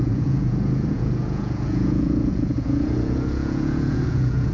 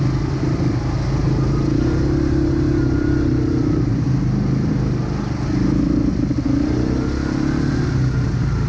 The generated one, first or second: first